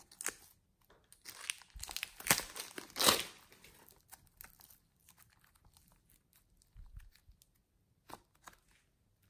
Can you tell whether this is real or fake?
real